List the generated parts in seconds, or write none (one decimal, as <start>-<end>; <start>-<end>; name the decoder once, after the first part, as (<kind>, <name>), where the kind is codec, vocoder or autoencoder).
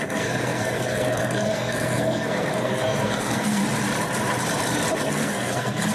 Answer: 0.0-3.6 (codec, SNAC); 5.0-5.9